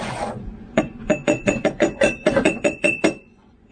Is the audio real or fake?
fake